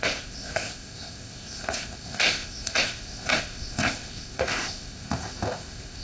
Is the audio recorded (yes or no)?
no